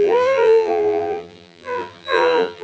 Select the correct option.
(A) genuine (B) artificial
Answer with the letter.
B